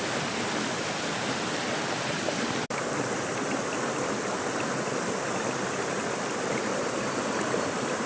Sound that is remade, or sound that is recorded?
recorded